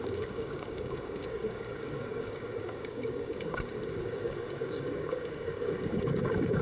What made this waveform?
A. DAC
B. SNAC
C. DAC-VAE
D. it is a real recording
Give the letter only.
A